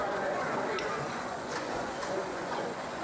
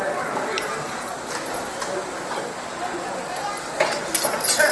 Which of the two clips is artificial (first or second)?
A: first